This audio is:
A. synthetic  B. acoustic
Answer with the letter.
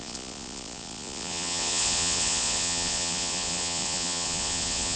A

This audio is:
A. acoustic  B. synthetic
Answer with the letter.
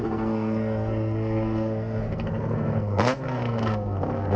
B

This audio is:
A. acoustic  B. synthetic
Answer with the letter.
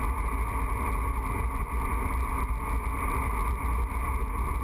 A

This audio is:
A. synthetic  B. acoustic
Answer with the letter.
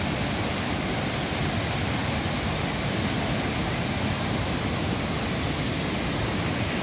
B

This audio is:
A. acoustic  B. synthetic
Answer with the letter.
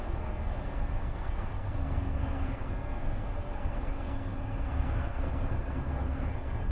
B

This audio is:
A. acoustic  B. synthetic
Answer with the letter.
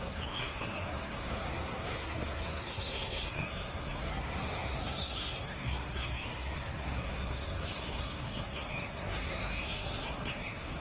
B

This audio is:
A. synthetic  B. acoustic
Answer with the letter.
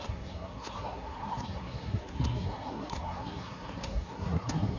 A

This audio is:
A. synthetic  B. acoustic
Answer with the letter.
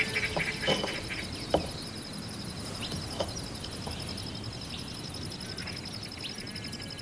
B